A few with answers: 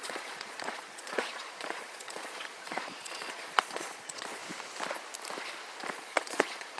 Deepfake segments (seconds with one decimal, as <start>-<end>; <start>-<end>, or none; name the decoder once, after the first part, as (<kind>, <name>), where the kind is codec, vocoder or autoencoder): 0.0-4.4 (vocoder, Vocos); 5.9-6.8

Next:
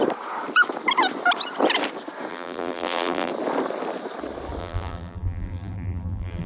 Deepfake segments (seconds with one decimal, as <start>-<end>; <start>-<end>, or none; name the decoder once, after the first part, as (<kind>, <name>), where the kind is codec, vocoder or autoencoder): 2.3-3.3 (vocoder, BigVGAN v2); 4.6-6.5

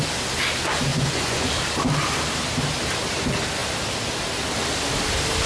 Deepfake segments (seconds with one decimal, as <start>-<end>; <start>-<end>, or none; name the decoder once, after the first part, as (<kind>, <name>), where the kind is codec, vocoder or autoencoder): 0.9-1.5 (vocoder, Vocos)

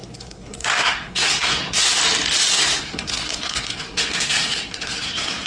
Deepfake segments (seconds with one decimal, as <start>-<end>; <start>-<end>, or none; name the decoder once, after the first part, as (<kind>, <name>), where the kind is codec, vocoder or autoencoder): 0.0-2.0 (codec, SNAC); 2.5-5.5